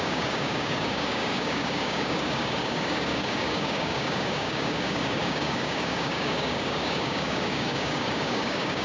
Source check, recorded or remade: remade